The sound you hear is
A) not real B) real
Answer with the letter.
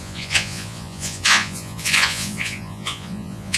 A